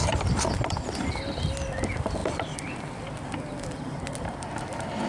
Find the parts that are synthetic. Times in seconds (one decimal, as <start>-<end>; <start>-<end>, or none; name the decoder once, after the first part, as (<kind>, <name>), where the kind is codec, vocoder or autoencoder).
none